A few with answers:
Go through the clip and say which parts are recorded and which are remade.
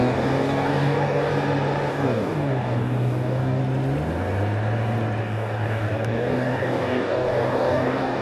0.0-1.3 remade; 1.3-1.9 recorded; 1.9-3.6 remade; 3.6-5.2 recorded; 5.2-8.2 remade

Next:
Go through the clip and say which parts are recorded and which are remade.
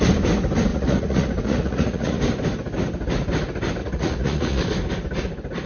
0.0-0.7 recorded; 0.7-2.2 remade; 2.2-3.8 recorded; 3.8-4.7 remade; 4.7-5.7 recorded